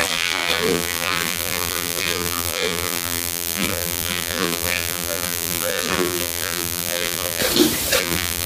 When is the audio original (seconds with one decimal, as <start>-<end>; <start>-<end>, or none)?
7.4-8.0